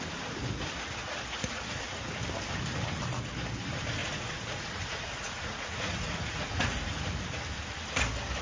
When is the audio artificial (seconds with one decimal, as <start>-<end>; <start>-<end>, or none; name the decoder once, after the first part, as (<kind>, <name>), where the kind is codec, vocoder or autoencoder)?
4.0-7.0 (vocoder, Vocos)